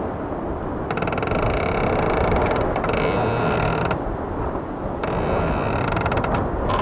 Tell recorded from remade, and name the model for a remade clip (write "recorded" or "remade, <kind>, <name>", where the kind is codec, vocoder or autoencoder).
recorded